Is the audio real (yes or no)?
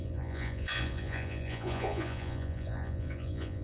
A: no